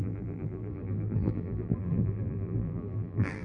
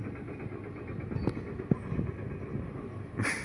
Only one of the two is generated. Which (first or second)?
first